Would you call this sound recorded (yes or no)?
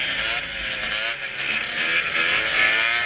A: yes